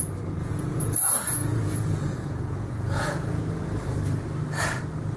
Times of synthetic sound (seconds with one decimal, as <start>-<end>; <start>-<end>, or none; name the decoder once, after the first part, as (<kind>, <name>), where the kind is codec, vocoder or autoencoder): 0.4-3.4 (vocoder, Vocos)